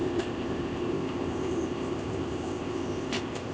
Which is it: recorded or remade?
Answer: remade